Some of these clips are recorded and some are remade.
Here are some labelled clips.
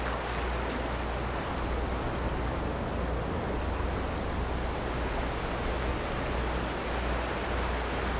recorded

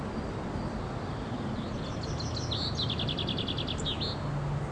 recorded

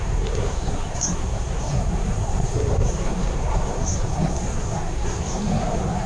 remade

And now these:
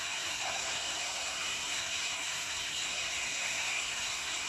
remade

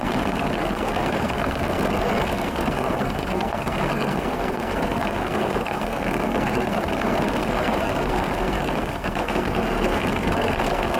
remade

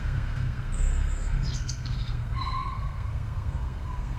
remade